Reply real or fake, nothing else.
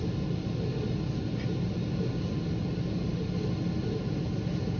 real